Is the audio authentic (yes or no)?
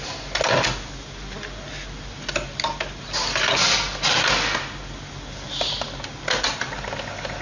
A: yes